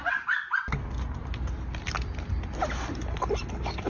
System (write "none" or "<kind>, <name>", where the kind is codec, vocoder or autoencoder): none